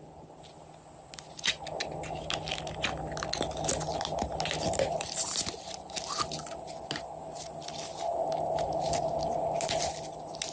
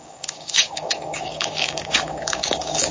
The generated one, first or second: second